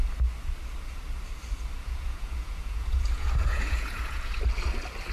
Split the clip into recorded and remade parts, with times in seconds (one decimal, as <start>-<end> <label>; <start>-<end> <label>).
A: 0.0-1.8 recorded; 1.8-4.4 remade; 4.4-5.1 recorded